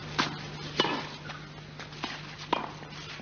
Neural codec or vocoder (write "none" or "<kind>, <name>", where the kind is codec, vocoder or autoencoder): none